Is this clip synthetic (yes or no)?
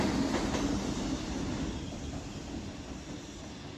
no